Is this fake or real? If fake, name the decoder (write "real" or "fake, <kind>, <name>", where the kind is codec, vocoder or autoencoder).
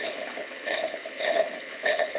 fake, codec, HILCodec